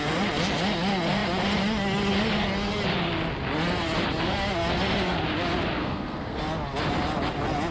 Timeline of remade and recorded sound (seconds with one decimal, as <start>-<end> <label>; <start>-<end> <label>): 0.0-5.8 recorded; 5.8-6.4 remade; 6.4-7.7 recorded